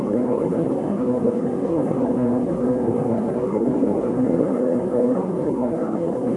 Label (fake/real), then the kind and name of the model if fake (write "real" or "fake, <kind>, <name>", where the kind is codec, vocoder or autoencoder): fake, codec, SNAC